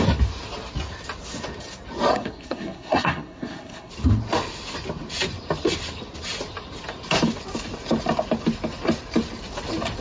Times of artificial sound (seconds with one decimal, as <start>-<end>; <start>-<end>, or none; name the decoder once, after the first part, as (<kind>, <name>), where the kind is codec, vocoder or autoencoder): 2.1-3.9 (codec, SNAC)